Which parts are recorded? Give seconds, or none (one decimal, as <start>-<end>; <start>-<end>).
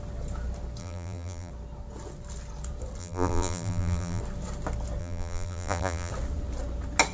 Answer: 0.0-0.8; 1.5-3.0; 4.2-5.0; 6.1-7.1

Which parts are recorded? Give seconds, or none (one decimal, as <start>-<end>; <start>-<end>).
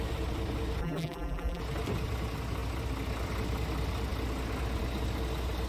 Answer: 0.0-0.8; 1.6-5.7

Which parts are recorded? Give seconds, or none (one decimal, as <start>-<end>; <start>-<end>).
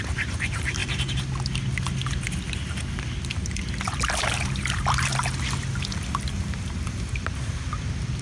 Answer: 0.8-4.1; 5.1-6.3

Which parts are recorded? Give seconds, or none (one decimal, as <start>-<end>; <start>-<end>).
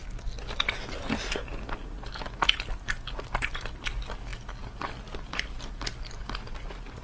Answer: 0.0-7.0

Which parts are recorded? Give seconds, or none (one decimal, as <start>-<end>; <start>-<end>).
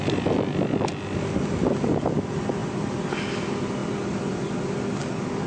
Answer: 0.0-2.6; 3.2-3.8; 4.3-5.5